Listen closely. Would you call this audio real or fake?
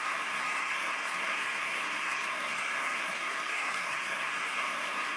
fake